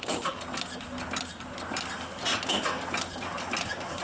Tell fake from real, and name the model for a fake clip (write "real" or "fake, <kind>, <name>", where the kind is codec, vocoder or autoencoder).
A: real